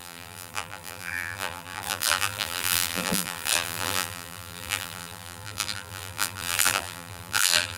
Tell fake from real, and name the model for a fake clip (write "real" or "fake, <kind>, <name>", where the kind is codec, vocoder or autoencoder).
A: fake, vocoder, BigVGAN v2